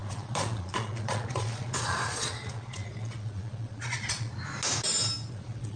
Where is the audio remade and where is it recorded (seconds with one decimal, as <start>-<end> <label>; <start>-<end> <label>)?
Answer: 0.0-4.3 remade; 4.3-5.3 recorded; 5.3-5.8 remade